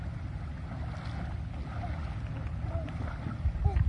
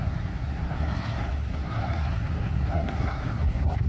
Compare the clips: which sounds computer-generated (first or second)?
second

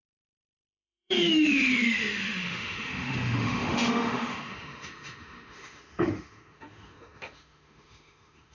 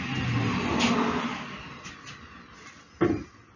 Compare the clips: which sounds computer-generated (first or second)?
first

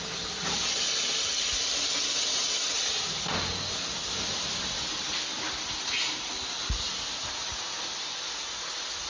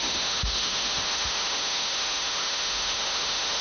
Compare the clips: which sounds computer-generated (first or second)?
second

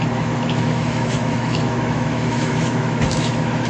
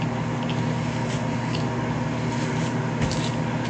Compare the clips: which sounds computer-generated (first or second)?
first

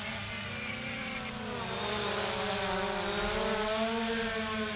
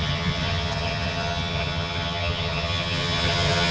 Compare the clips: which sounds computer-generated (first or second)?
second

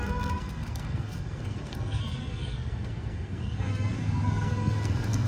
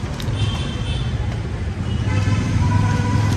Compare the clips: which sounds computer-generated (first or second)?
first